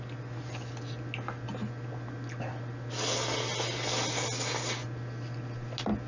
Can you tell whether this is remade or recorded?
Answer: recorded